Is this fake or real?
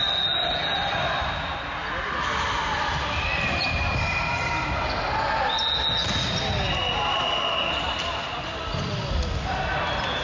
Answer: real